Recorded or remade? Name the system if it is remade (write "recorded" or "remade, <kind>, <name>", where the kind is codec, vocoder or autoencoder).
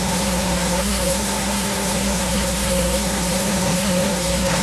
remade, codec, SNAC